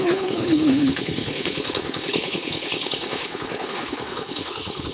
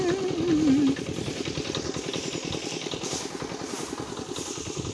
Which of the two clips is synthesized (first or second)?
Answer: first